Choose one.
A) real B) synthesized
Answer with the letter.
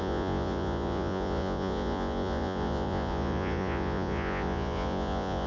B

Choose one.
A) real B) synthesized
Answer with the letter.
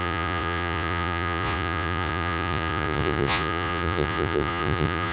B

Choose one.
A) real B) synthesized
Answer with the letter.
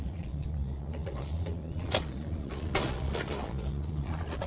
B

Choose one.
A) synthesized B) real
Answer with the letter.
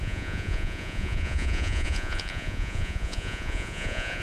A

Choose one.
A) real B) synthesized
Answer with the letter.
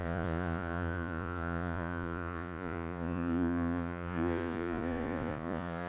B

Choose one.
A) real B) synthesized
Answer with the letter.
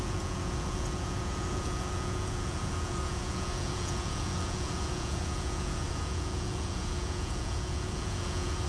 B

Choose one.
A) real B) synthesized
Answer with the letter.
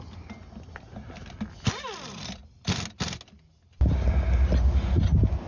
A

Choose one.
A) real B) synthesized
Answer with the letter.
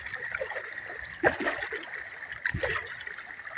A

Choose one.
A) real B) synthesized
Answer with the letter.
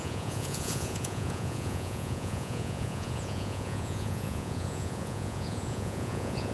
B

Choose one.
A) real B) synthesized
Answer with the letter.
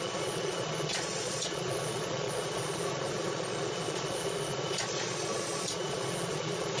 B